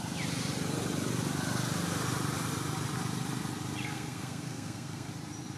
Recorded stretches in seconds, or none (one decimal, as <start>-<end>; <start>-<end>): 0.0-3.8; 5.1-5.6